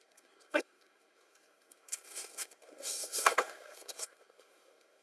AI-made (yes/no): yes